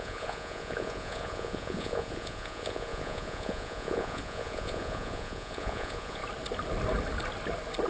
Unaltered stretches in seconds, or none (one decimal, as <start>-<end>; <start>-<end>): 6.2-7.9